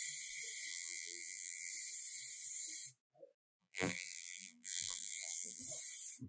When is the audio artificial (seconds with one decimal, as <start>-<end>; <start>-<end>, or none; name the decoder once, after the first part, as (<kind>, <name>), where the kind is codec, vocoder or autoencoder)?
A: 0.7-1.7 (vocoder, BigVGAN v2); 3.6-5.6